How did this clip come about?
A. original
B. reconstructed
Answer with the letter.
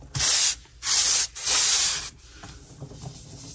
A